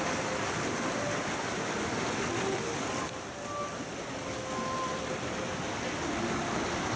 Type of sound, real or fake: real